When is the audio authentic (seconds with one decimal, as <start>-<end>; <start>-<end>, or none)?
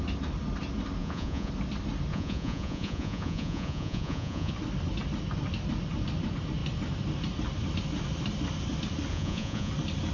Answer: 0.0-1.0; 1.5-2.1; 4.5-9.1; 9.7-10.1